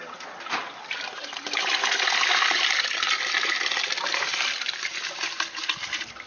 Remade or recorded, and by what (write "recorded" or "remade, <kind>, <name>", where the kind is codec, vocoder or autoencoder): recorded